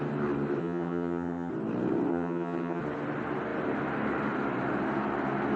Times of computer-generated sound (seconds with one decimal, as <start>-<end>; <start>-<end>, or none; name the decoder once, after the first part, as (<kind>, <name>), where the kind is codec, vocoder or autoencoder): 0.6-1.5 (vocoder, HiFi-GAN); 2.1-2.8